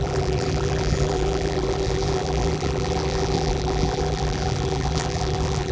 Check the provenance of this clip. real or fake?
fake